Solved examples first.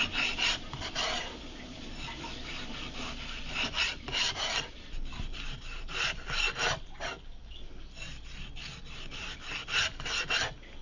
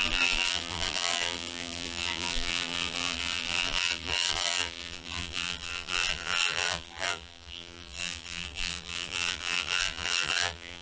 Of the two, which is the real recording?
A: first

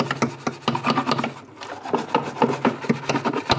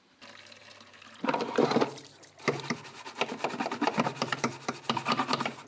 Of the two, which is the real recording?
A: first